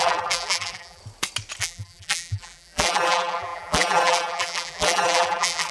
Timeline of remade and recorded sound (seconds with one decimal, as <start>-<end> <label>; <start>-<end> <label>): 0.0-1.0 remade; 1.0-1.6 recorded; 1.6-5.7 remade